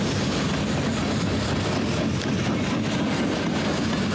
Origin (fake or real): real